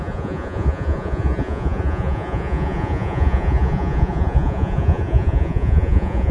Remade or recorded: remade